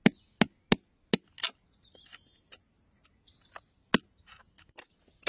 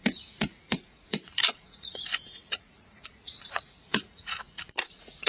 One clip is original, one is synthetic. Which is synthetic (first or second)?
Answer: second